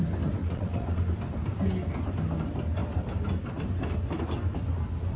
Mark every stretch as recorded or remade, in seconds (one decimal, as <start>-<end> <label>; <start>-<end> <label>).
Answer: 0.0-0.4 recorded; 0.4-1.0 remade; 1.0-5.2 recorded